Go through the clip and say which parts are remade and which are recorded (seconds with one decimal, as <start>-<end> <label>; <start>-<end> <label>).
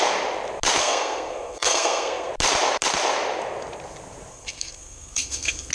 0.0-0.8 recorded; 0.8-2.3 remade; 2.3-4.3 recorded; 4.3-5.7 remade